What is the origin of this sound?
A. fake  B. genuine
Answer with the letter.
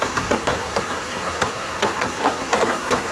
A